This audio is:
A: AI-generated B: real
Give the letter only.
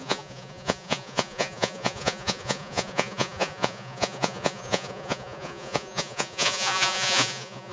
A